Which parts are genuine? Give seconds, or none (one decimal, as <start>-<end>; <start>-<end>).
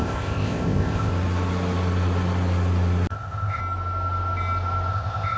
1.1-3.1; 3.6-4.9